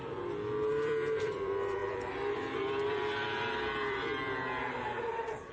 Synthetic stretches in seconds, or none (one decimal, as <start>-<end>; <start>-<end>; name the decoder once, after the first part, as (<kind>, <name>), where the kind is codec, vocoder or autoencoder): 0.7-5.5 (vocoder, BigVGAN v2)